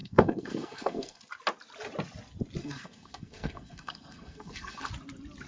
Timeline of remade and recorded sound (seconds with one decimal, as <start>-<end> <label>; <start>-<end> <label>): 0.0-1.2 remade; 1.2-2.6 recorded; 2.6-4.9 remade; 4.9-5.5 recorded